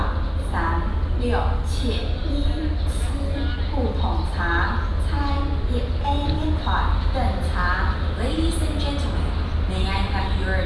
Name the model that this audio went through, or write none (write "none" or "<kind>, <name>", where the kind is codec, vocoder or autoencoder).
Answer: none